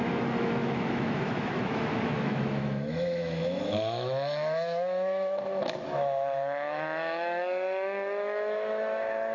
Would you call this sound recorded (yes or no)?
no